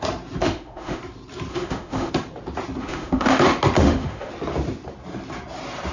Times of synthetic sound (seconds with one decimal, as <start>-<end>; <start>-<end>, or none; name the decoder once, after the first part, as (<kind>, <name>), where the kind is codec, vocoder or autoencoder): 0.4-1.0 (autoencoder, DAC-VAE); 1.5-2.1; 2.8-3.4; 3.8-4.3